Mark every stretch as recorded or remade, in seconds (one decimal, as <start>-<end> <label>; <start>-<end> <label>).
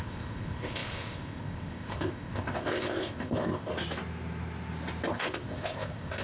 0.0-3.7 remade; 3.7-5.1 recorded; 5.1-6.2 remade